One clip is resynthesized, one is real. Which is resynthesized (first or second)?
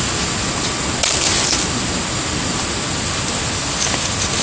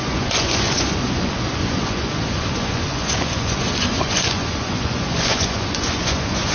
second